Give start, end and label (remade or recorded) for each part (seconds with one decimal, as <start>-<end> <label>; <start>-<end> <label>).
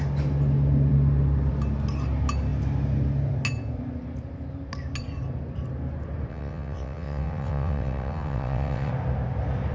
0.0-6.3 recorded; 6.3-8.9 remade; 8.9-9.7 recorded